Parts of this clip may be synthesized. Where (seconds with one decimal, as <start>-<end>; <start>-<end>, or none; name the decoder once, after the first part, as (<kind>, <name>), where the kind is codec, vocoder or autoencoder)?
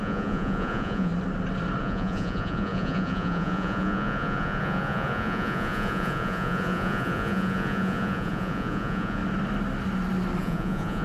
0.0-1.1 (vocoder, Vocos); 1.8-9.2; 10.4-11.0